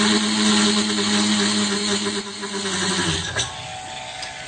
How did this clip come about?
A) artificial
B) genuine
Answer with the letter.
B